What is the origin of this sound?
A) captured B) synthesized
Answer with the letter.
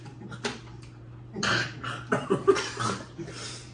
B